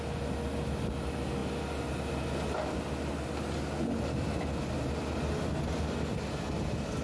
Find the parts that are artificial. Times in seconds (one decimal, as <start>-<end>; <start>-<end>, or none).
none